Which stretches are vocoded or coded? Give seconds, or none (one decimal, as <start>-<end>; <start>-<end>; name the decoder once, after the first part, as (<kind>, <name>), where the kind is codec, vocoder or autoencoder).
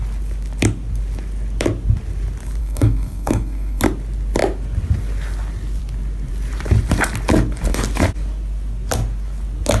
2.6-3.8 (codec, SNAC)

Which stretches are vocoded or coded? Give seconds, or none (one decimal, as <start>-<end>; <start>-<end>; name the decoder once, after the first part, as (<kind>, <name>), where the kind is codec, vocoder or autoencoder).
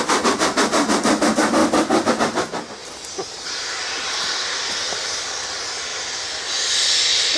none